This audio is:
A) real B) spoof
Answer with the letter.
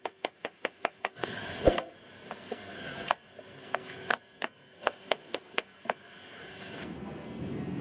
B